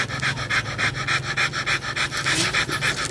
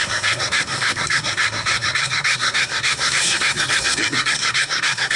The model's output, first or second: second